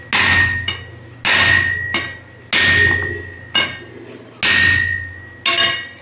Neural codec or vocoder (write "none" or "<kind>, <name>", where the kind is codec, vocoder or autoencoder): none